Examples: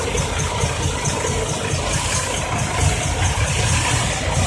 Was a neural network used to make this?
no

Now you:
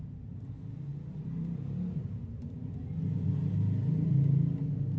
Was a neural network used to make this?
no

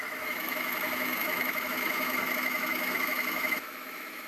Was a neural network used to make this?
yes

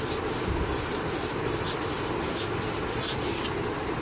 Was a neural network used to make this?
no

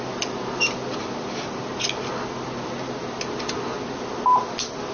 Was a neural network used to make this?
no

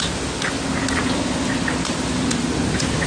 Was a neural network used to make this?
no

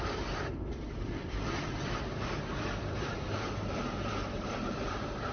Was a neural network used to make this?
yes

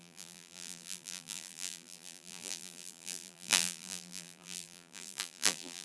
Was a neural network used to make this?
yes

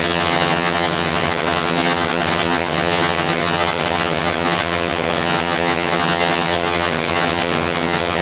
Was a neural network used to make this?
yes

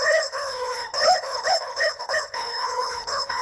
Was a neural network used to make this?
yes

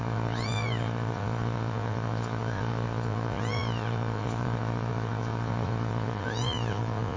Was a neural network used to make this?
yes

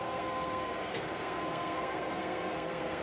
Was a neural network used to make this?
yes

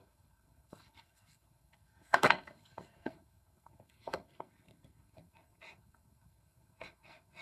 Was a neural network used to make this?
yes